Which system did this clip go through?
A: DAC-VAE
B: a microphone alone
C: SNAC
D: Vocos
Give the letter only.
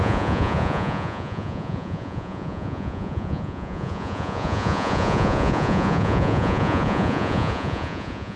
D